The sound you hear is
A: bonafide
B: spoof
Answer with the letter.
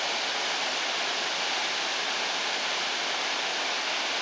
A